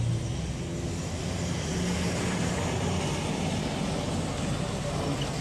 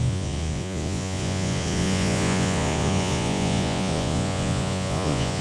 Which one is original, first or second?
first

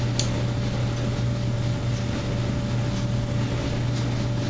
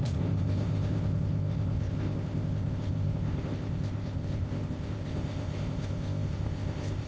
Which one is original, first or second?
first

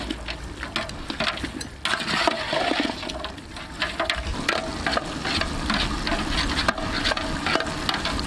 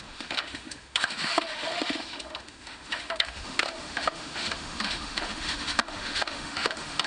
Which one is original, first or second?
first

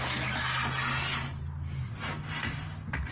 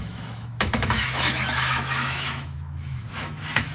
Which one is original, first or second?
first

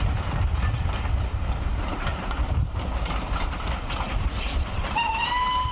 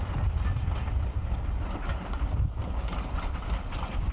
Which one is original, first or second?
second